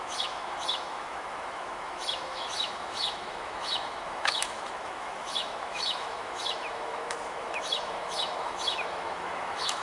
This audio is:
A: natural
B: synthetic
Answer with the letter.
B